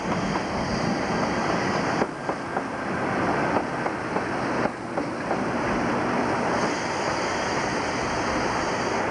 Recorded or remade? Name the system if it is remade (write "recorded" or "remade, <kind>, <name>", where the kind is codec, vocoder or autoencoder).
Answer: recorded